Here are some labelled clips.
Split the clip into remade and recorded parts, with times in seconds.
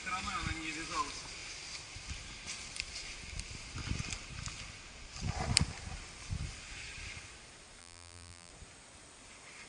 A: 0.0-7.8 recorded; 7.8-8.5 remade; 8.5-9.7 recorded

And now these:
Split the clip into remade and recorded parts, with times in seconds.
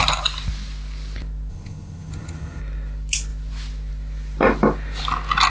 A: 0.0-1.5 recorded; 1.5-2.6 remade; 2.6-5.5 recorded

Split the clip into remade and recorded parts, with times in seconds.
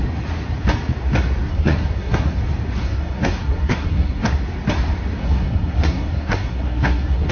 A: 0.0-1.5 recorded; 1.5-2.4 remade; 2.4-2.8 recorded; 2.8-4.4 remade; 4.4-5.2 recorded; 5.2-7.3 remade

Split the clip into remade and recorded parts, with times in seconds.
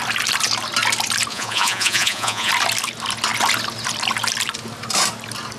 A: 0.0-1.3 recorded; 1.3-2.5 remade; 2.5-5.6 recorded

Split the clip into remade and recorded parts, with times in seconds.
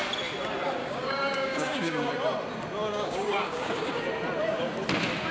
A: 0.0-0.8 recorded; 0.8-2.1 remade; 2.1-2.8 recorded; 2.8-4.0 remade; 4.0-5.3 recorded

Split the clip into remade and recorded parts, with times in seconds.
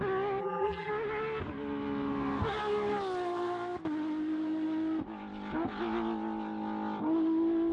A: 0.0-0.4 recorded; 0.4-0.9 remade; 0.9-7.7 recorded